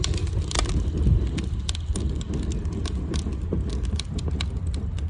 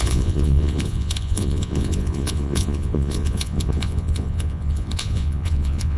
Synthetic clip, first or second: second